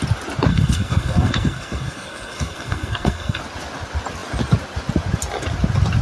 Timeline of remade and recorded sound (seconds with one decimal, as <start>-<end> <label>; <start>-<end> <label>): 0.0-0.5 recorded; 0.5-3.4 remade; 3.4-6.0 recorded